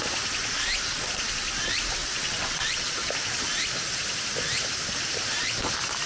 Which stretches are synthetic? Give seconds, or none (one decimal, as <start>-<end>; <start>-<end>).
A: 2.0-3.1